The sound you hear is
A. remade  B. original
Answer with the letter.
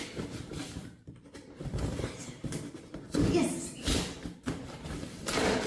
A